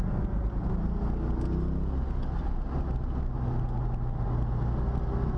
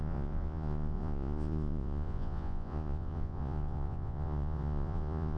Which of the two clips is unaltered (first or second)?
first